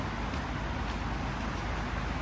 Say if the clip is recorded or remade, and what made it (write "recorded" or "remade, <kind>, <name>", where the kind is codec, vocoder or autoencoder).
recorded